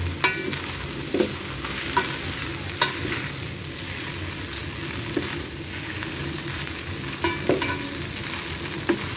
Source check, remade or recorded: recorded